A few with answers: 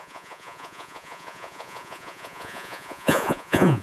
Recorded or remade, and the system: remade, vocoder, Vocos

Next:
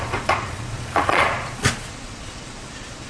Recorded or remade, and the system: remade, vocoder, Vocos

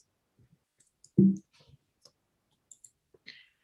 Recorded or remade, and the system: recorded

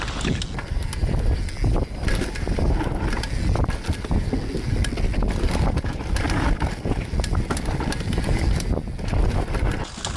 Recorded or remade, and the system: recorded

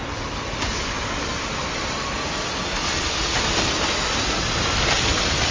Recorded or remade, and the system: remade, vocoder, BigVGAN v2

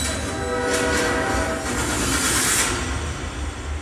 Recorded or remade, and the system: recorded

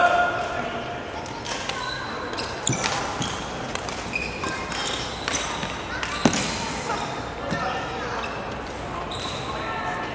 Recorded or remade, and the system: recorded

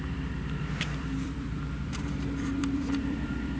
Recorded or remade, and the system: remade, vocoder, BigVGAN v2